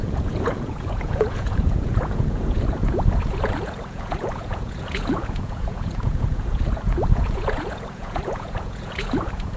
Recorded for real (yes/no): no